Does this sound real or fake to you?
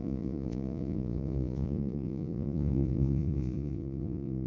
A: fake